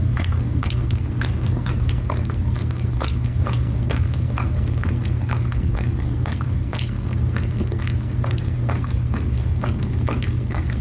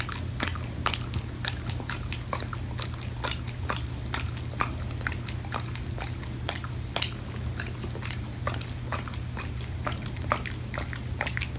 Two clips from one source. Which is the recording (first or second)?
second